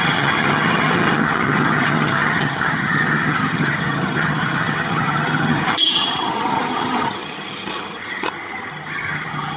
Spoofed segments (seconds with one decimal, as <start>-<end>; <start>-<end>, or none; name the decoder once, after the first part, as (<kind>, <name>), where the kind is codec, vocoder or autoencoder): 0.0-9.6 (vocoder, HiFi-GAN)